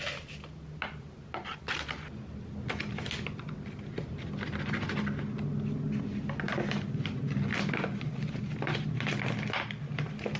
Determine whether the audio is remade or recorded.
recorded